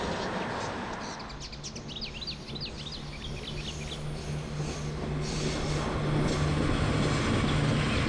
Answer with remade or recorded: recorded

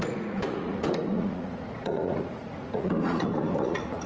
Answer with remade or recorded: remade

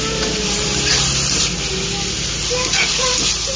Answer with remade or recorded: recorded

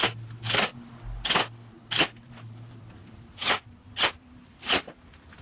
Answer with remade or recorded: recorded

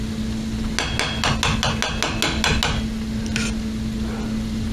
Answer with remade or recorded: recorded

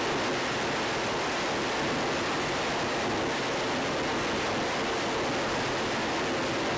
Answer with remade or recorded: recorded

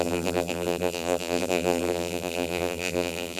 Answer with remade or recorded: remade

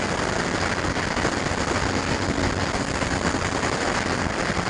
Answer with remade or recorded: recorded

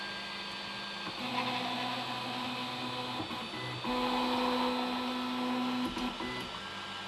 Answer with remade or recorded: recorded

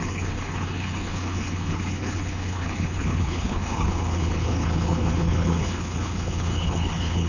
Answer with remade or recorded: remade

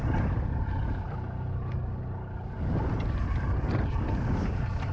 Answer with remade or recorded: recorded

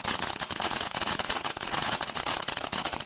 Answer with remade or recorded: remade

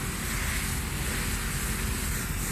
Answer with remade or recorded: recorded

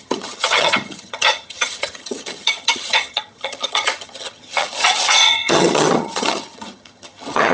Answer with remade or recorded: remade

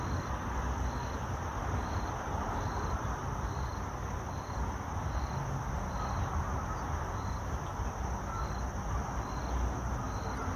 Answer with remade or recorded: recorded